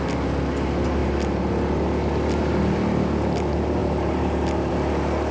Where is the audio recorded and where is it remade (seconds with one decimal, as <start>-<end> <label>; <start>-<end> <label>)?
0.0-3.8 recorded; 3.8-4.7 remade; 4.7-5.3 recorded